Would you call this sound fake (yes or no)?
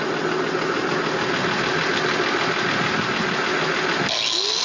no